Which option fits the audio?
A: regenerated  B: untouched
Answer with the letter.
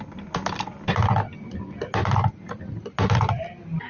B